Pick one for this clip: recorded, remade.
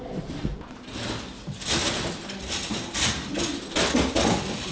recorded